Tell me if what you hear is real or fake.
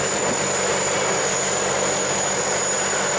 real